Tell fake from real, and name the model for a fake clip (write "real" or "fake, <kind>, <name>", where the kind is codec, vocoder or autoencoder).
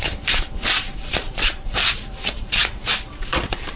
fake, vocoder, BigVGAN v2